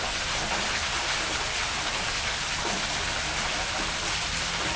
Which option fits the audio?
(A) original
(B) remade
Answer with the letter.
A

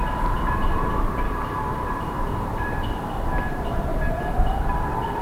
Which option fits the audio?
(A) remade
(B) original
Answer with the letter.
A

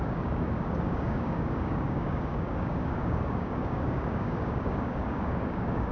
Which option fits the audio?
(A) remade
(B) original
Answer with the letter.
A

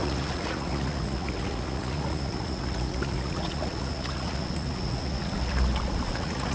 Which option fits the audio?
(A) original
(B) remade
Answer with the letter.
B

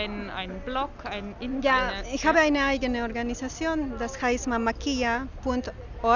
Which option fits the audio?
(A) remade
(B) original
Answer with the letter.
B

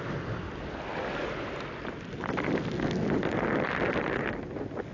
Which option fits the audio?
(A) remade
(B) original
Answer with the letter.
B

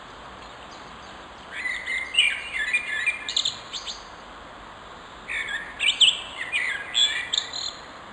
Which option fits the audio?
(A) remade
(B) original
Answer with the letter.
B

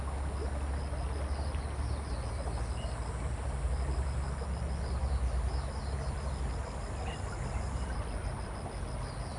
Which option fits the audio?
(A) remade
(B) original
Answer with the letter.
B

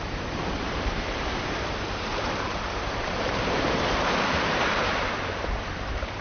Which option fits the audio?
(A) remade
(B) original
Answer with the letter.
A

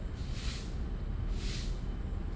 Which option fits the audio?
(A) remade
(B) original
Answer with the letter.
B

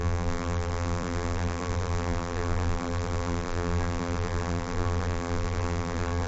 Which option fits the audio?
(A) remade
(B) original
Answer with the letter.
A